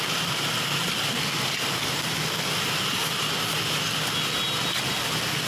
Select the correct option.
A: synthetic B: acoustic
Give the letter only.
B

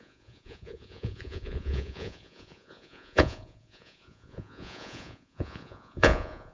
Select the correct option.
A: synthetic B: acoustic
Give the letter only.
A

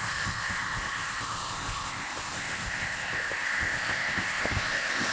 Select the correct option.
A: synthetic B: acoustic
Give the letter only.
A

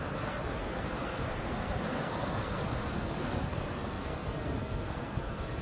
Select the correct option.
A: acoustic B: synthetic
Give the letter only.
B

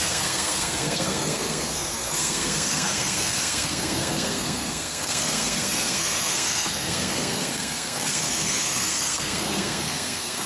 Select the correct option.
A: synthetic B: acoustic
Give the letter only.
A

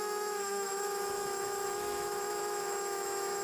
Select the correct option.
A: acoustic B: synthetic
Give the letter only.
B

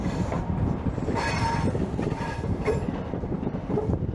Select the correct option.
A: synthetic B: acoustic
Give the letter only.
A